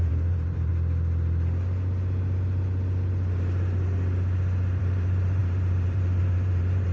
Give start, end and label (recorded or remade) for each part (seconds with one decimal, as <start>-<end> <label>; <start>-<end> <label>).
0.0-0.7 remade; 0.7-4.8 recorded; 4.8-6.9 remade